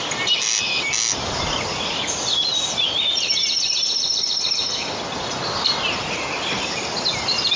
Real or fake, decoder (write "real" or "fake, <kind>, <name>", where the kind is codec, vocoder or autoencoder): real